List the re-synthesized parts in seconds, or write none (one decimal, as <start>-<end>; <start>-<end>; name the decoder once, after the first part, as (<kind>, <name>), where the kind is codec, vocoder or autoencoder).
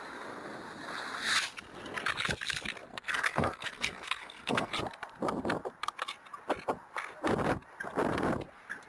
2.9-4.7 (codec, SNAC)